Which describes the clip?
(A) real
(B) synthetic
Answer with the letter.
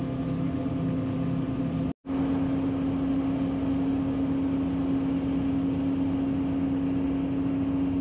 A